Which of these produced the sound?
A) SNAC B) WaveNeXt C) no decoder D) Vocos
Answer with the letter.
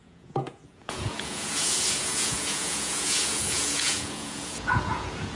D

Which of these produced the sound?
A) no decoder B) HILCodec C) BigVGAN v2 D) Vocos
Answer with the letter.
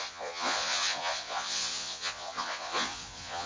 D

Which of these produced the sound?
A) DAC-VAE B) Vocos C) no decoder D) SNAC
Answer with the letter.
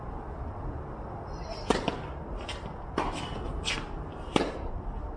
C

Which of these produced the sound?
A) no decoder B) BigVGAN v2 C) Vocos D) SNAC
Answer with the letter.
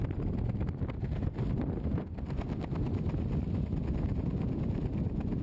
A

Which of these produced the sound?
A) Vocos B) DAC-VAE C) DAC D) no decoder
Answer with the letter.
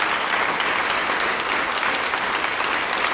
D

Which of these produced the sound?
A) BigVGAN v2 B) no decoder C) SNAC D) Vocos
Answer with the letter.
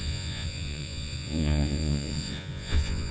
D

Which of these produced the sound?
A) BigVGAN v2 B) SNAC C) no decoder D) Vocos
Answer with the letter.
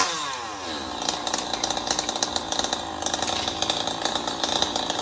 C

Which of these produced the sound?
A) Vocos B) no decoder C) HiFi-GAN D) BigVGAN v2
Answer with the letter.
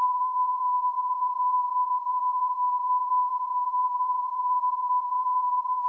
A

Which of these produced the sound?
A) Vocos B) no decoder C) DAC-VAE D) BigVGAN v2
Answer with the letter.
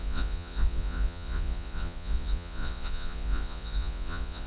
A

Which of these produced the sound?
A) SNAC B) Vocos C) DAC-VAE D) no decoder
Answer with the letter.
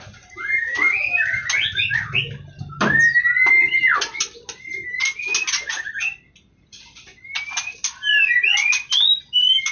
D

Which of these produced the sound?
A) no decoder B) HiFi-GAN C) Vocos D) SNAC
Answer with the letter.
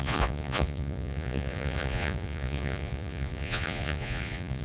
C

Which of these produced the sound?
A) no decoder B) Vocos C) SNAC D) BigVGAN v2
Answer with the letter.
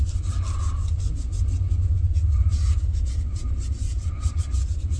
A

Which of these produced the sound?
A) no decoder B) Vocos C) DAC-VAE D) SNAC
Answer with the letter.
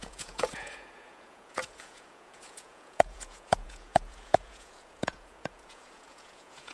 B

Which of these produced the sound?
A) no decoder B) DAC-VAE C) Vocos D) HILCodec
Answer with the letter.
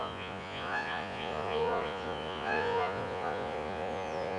C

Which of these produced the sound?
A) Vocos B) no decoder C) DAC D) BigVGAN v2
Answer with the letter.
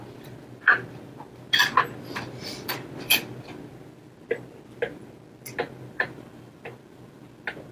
B